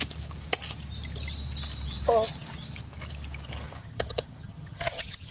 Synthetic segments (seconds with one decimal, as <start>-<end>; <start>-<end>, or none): 3.8-5.3